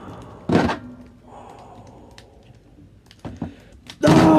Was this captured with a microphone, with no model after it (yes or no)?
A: yes